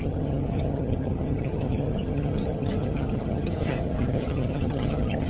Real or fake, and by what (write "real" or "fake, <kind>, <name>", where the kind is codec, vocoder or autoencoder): fake, vocoder, HiFi-GAN